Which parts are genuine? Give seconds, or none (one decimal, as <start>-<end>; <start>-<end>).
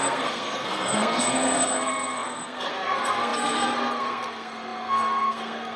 none